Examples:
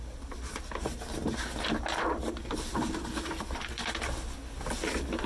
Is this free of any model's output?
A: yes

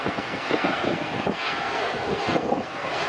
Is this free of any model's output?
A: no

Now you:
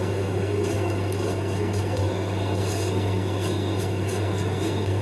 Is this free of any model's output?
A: no